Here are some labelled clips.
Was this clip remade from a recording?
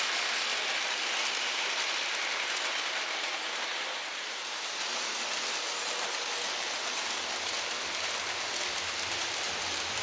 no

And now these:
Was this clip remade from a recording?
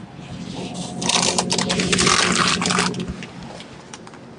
no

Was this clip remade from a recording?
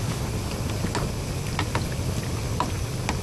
no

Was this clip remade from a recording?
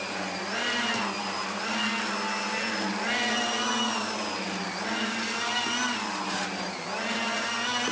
no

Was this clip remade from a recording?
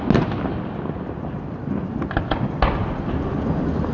no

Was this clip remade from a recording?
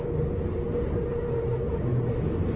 no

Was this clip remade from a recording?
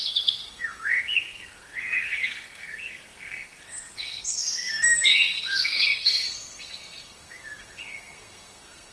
yes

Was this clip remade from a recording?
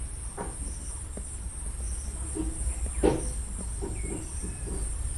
no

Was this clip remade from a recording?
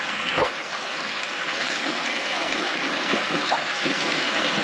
yes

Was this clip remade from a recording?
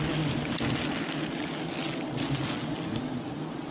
no